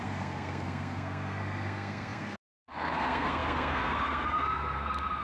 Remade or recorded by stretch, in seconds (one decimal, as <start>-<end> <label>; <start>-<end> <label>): 0.0-5.2 remade

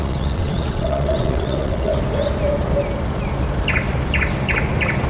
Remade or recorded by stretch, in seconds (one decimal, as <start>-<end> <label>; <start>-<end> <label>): 0.0-1.9 remade; 1.9-5.1 recorded

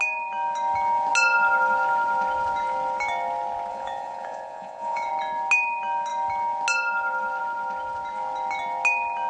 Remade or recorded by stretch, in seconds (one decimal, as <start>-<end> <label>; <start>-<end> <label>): 0.0-3.7 recorded; 3.7-5.1 remade; 5.1-9.3 recorded

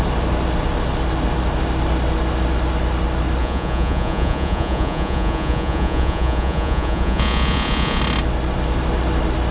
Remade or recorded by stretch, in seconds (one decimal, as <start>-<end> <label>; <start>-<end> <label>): 0.0-3.4 recorded; 3.4-8.0 remade; 8.0-9.5 recorded

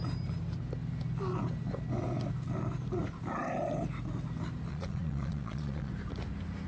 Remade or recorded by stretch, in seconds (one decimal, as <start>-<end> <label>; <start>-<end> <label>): 0.0-4.7 recorded; 4.7-5.9 remade; 5.9-6.7 recorded

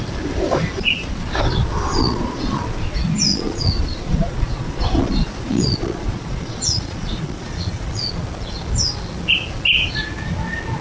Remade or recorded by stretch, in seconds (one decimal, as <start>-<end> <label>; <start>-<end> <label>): 0.0-1.9 recorded; 1.9-2.6 remade; 2.6-3.3 recorded; 3.3-8.1 remade; 8.1-10.8 recorded